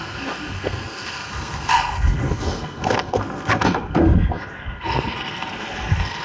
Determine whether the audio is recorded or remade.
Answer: remade